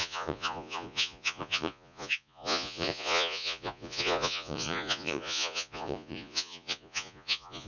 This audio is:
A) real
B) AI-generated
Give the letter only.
B